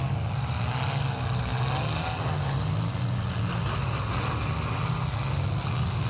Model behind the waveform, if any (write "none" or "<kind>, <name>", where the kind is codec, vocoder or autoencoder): none